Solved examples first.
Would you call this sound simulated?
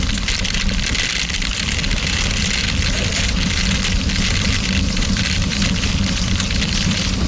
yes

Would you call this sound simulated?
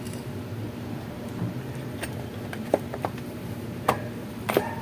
yes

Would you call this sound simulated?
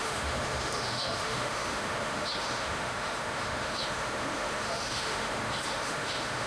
yes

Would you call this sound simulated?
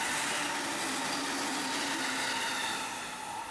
no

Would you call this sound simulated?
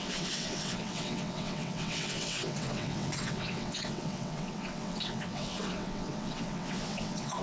yes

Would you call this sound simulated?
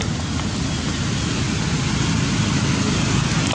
no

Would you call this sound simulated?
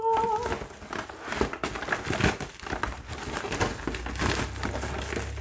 no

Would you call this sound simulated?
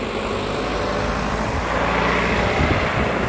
no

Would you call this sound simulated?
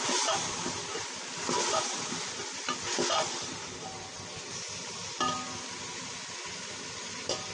no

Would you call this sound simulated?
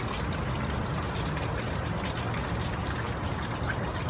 no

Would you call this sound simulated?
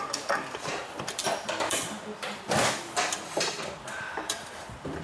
yes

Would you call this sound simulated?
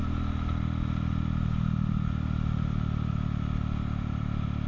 no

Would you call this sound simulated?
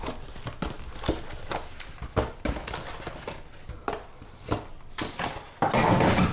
no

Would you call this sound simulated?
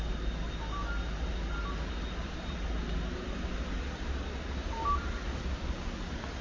no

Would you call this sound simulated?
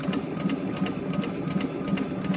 no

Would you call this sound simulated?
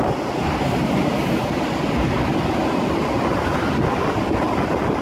no